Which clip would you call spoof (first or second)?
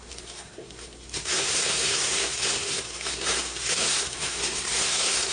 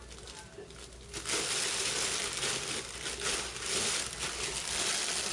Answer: first